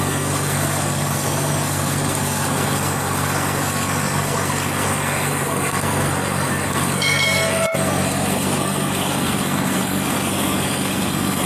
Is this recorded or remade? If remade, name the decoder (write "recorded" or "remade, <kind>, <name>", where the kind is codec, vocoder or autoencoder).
remade, codec, SNAC